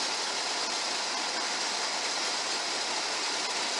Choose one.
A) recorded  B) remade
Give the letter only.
A